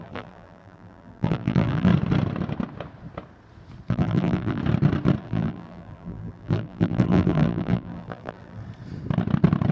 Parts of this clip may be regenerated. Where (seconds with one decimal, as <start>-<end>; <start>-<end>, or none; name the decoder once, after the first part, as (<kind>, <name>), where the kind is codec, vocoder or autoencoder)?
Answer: 0.0-1.9 (vocoder, BigVGAN v2); 3.9-4.6; 5.2-8.6